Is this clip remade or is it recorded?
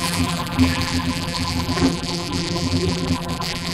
remade